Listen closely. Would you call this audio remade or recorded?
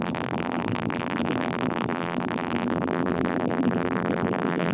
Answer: remade